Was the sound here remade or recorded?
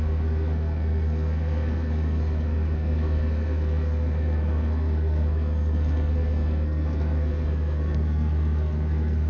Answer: remade